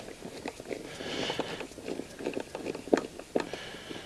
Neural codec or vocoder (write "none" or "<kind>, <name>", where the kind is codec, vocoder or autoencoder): none